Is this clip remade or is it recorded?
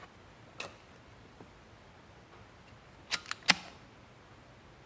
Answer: recorded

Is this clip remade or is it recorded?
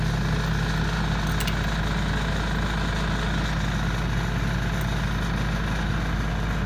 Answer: recorded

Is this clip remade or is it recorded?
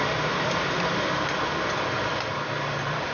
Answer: remade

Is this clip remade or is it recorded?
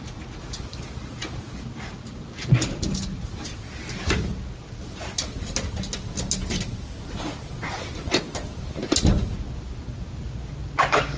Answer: recorded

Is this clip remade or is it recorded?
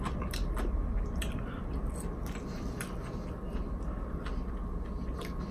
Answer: recorded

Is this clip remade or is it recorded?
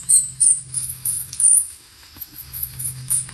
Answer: remade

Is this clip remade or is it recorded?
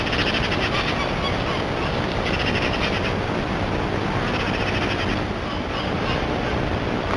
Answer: recorded